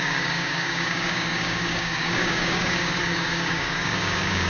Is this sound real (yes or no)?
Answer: no